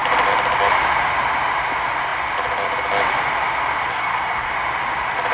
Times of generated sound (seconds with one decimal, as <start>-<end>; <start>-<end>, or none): 3.9-4.5

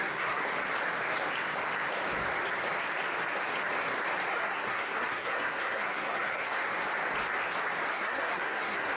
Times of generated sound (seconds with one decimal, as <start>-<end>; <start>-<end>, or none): 0.0-0.4; 4.3-6.6; 7.9-9.0

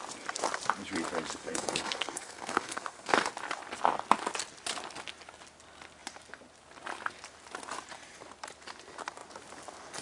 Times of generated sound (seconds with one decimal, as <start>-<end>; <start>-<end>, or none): 1.4-3.3

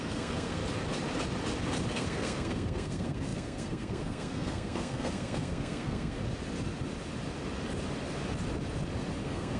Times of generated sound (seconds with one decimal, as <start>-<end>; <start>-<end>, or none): 0.0-0.6; 1.9-6.2; 9.2-9.6

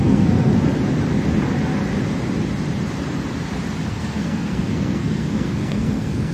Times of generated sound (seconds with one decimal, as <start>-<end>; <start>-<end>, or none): 0.0-0.5; 3.9-6.3

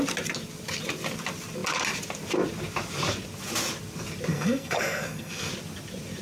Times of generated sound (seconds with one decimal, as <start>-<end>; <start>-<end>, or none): 4.3-5.5